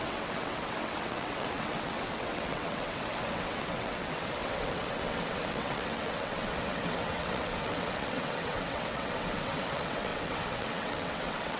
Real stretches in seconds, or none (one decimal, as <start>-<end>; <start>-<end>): none